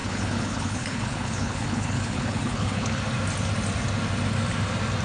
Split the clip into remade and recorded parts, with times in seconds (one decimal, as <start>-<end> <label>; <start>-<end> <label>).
0.0-3.0 remade; 3.0-5.0 recorded